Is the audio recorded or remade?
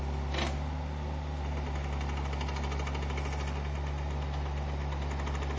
recorded